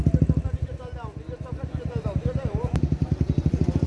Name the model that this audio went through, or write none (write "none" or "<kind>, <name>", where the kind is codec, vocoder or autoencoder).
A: none